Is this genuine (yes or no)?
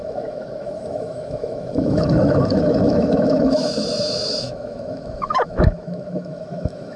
no